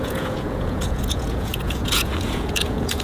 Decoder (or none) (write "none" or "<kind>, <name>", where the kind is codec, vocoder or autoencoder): vocoder, Vocos